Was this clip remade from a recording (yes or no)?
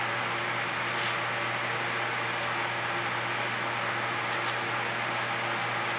no